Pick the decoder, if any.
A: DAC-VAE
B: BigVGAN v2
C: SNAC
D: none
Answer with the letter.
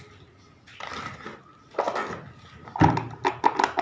D